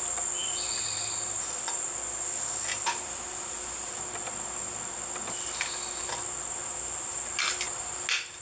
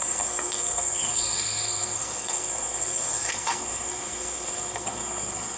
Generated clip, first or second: second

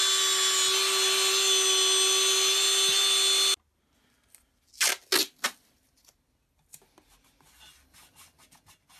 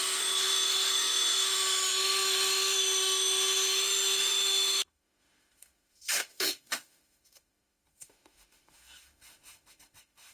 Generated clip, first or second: second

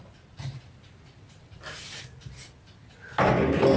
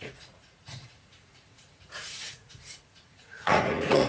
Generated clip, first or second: second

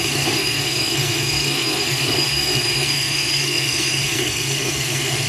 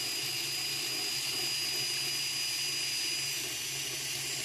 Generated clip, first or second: first